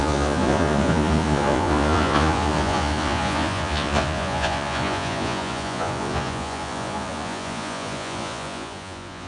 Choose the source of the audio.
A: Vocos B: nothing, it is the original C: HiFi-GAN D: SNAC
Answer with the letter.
A